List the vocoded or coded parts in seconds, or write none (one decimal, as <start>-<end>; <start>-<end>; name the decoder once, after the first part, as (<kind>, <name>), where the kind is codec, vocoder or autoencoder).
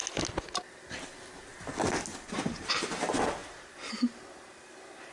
2.1-2.7 (vocoder, BigVGAN v2); 3.4-3.9